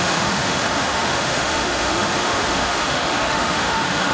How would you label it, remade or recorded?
remade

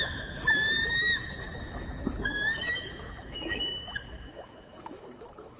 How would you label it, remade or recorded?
remade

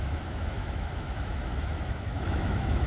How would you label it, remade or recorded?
remade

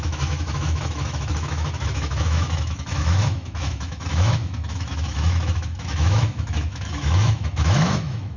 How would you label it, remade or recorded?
remade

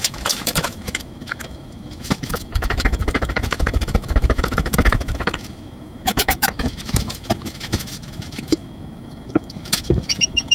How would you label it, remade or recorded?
remade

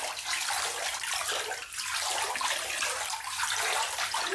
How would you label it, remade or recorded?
recorded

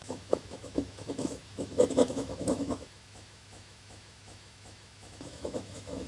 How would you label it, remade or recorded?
remade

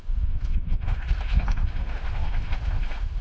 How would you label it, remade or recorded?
remade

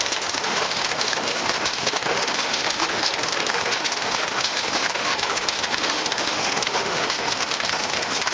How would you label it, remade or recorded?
remade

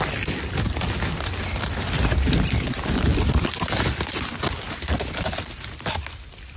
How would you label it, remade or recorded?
recorded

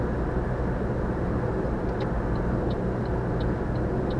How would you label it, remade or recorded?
recorded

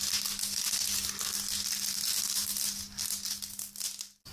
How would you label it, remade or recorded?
recorded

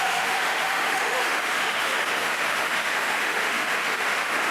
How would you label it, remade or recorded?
remade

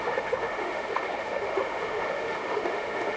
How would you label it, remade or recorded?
remade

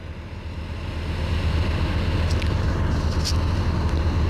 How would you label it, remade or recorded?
recorded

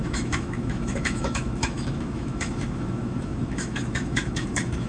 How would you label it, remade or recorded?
remade